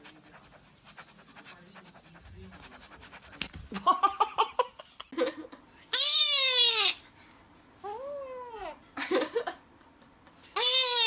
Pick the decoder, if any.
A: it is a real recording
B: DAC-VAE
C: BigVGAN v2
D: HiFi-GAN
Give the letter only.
A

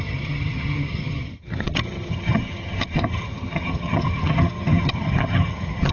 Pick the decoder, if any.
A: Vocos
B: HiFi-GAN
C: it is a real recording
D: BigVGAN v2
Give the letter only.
B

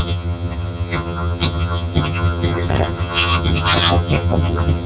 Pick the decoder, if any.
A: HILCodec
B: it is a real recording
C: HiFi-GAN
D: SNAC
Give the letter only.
C